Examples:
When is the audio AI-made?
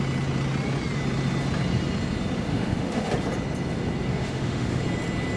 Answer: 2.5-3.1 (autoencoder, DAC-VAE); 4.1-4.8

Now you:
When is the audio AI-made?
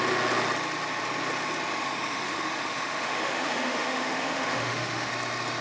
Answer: 1.7-5.1 (autoencoder, DAC-VAE)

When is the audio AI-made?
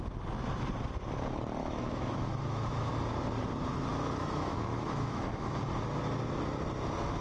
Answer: 1.6-2.9 (autoencoder, DAC-VAE); 3.9-5.6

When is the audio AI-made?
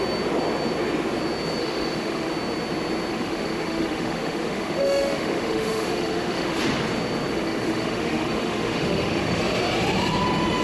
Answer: 1.6-2.3 (autoencoder, DAC-VAE); 3.1-6.6; 7.3-9.4